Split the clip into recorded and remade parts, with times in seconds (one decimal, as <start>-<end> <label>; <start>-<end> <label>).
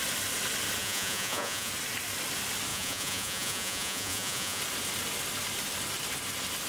0.0-0.8 recorded; 0.8-1.7 remade; 1.7-2.7 recorded; 2.7-4.6 remade; 4.6-6.7 recorded